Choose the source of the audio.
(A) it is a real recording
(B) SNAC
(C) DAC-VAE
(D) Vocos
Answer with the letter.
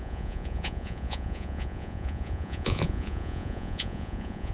D